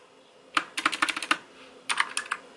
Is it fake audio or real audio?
real